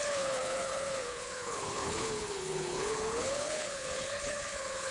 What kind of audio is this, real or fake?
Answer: fake